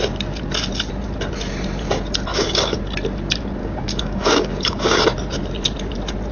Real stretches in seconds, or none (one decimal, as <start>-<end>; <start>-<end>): 0.0-2.3; 2.8-3.6; 5.0-6.3